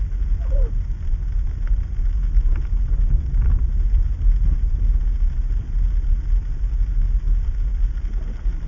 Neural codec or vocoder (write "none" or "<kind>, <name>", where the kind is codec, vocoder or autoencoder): none